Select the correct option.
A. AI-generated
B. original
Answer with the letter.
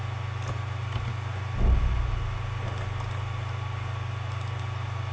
B